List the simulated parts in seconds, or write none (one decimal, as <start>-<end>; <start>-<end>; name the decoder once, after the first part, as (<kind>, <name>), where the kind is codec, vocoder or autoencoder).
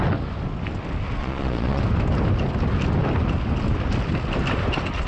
1.2-1.8 (vocoder, Vocos)